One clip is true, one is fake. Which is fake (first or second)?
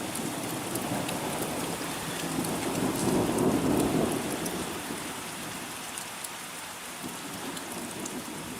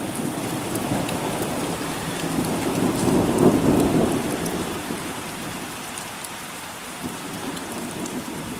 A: second